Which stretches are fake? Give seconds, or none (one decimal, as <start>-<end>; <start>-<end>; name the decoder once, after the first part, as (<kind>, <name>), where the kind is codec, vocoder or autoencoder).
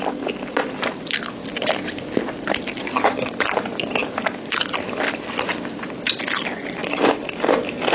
1.4-2.0 (vocoder, BigVGAN v2)